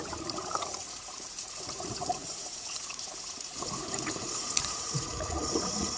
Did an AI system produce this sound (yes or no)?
yes